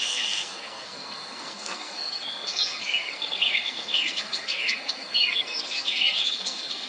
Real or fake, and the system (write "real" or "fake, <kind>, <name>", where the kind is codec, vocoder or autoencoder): fake, codec, SNAC